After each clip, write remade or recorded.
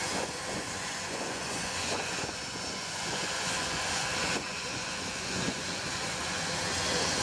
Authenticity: remade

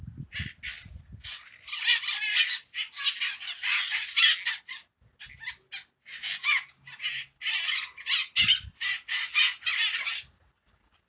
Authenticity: recorded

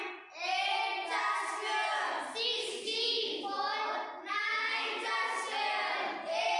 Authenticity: recorded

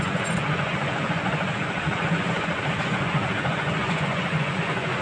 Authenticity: remade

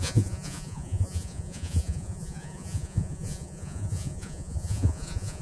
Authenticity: remade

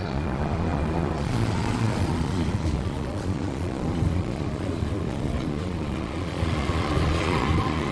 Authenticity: remade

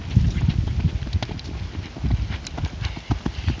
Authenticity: recorded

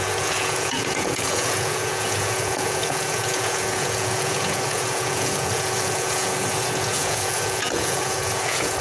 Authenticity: remade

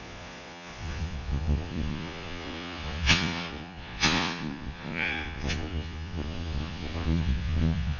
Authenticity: remade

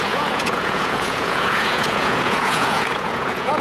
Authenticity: remade